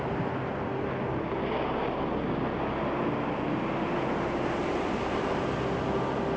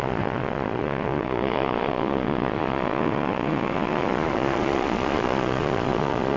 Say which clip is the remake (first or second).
second